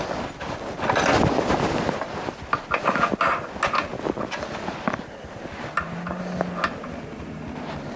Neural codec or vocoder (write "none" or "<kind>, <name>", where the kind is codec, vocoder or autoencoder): none